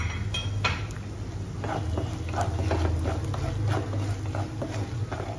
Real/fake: real